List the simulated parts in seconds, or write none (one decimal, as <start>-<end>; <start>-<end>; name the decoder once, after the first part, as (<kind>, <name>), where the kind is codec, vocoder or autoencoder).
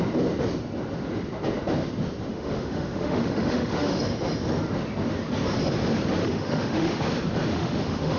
2.3-4.0 (autoencoder, DAC-VAE); 6.2-7.0; 7.5-8.2